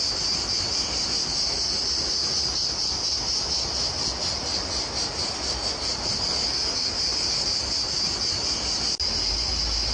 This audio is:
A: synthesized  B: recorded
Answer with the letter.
B